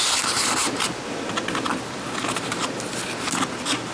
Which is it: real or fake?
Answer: real